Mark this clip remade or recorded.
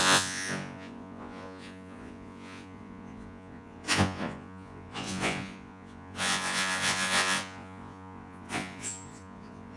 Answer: remade